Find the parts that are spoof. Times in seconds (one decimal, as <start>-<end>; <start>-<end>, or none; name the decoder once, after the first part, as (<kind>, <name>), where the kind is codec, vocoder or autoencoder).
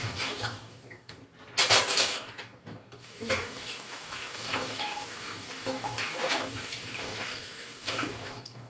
0.0-1.2 (codec, DAC); 1.8-8.7